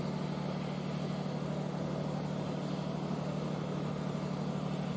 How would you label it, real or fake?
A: real